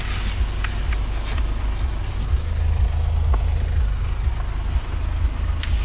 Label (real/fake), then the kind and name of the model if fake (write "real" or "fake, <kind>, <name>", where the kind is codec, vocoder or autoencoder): real